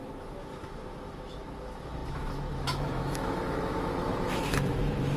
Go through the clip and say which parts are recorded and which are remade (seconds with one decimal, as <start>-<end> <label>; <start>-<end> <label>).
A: 0.0-5.2 remade